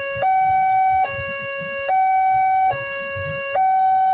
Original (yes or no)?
no